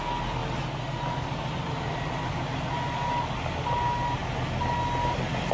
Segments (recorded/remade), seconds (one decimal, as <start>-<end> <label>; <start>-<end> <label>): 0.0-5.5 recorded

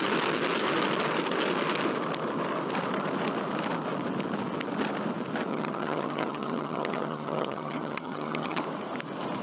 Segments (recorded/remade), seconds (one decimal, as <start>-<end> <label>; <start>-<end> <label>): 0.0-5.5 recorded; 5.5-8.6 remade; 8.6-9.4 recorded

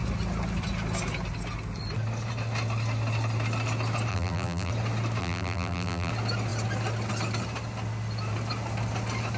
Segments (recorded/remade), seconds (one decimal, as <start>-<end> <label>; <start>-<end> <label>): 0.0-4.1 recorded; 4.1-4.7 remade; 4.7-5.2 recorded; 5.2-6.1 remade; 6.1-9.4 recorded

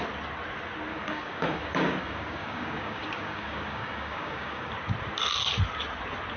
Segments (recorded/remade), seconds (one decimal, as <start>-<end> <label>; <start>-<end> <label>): 0.0-0.9 recorded; 0.9-4.7 remade; 4.7-6.4 recorded